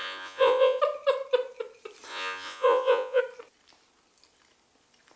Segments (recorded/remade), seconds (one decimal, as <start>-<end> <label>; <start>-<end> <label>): 0.0-0.8 remade; 0.8-2.1 recorded; 2.1-3.2 remade; 3.2-5.2 recorded